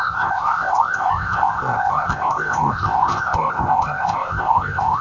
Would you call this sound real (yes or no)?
no